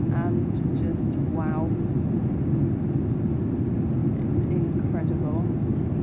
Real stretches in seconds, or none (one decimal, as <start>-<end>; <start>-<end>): 0.0-0.9; 1.5-6.0